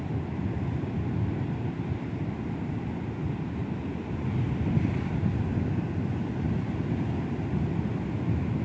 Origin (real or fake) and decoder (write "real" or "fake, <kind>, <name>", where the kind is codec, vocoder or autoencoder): real